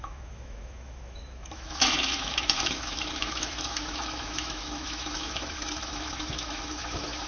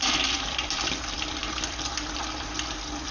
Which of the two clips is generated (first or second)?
first